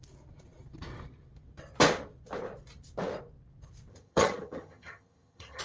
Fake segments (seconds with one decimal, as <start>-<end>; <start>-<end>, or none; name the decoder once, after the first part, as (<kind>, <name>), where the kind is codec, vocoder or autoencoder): 3.9-5.6 (vocoder, HiFi-GAN)